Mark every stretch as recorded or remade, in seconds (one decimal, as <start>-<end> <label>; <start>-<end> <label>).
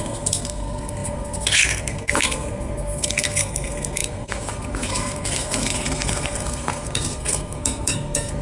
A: 0.0-8.4 remade